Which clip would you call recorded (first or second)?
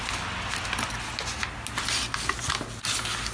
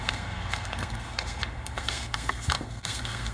first